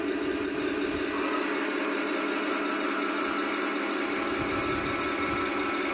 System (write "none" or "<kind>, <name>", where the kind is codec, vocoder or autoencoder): none